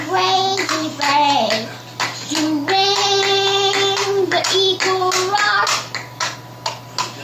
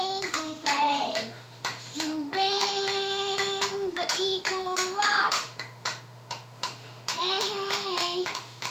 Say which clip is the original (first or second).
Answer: first